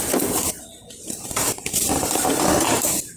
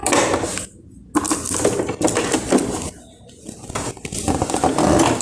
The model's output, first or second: first